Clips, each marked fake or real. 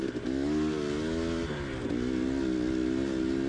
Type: real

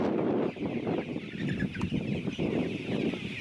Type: real